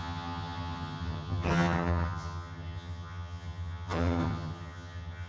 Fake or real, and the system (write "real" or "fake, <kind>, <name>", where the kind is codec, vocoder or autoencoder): fake, vocoder, HiFi-GAN